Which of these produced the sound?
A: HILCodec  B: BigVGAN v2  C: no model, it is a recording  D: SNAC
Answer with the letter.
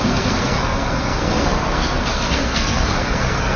D